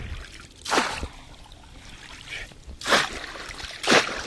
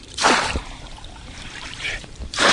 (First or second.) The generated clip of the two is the second